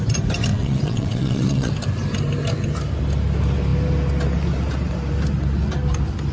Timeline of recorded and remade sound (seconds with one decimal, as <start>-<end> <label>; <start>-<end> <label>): 0.0-0.5 recorded; 0.5-1.7 remade; 1.7-6.3 recorded